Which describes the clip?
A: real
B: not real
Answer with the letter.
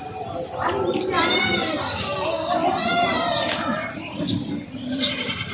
A